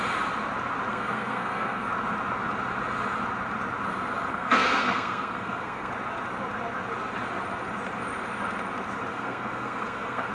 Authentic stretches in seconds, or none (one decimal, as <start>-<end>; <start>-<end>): 0.0-0.9; 1.8-4.3; 5.9-9.1